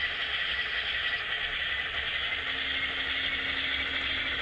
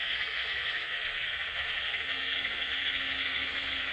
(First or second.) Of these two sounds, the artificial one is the second